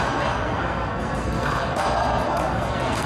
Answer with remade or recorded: remade